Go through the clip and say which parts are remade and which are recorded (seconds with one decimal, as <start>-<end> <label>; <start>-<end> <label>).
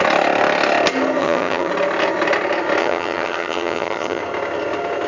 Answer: 0.0-1.2 recorded; 1.2-1.7 remade; 1.7-2.8 recorded; 2.8-4.2 remade; 4.2-5.1 recorded